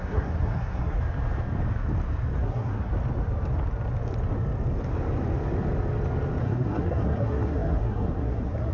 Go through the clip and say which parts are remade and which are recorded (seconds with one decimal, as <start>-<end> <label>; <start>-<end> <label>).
0.0-1.0 remade; 1.0-2.4 recorded; 2.4-2.9 remade; 2.9-6.4 recorded; 6.4-8.7 remade